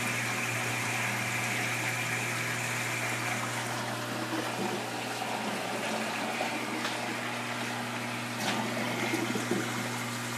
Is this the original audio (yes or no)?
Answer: yes